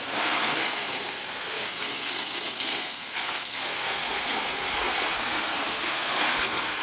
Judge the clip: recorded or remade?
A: remade